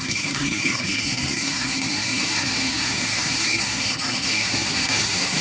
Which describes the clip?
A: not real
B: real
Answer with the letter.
A